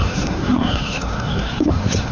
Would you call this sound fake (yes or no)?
yes